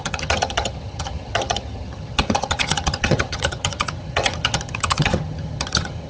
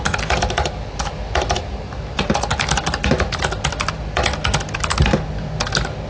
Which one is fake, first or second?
first